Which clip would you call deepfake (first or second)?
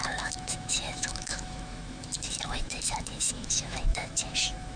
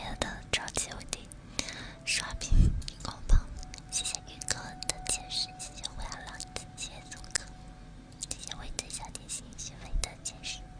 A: first